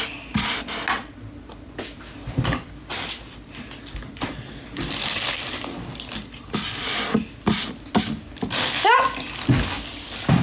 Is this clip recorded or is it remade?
recorded